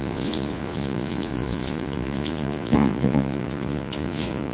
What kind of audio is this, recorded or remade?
remade